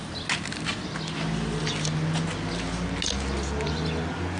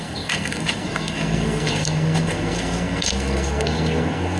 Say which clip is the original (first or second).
first